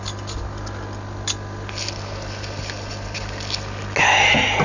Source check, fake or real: real